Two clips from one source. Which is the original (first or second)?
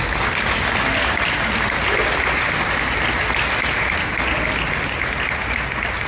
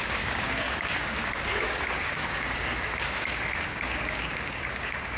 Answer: first